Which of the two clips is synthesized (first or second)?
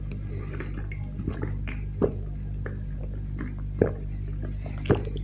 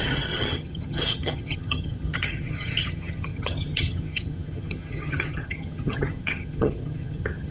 second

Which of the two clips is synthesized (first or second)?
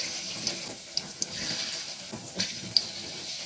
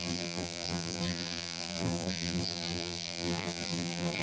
second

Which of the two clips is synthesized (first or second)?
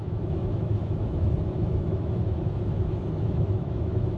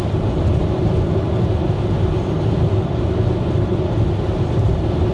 first